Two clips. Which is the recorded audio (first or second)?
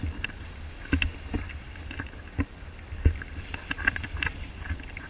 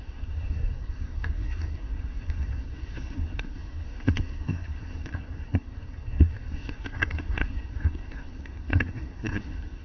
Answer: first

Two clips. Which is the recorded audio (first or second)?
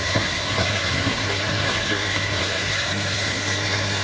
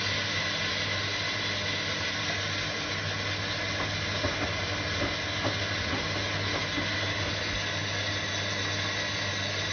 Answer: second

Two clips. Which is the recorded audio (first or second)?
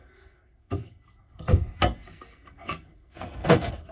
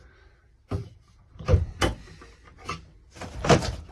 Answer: second